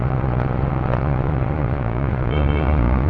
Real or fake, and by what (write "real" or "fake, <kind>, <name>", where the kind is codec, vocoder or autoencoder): fake, vocoder, Vocos